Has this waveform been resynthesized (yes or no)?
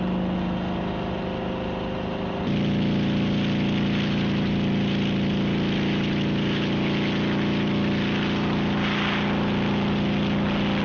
no